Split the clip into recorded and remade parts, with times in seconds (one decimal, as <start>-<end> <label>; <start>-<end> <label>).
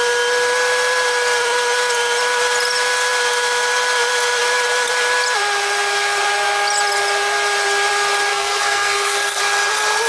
0.0-8.3 recorded; 8.3-9.4 remade; 9.4-10.1 recorded